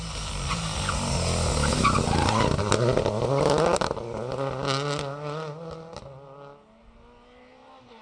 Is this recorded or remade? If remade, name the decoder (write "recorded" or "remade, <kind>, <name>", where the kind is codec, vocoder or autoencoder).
recorded